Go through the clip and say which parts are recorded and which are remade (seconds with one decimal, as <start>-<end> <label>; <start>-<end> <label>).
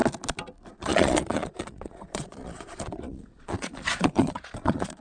0.0-0.7 recorded; 0.7-5.0 remade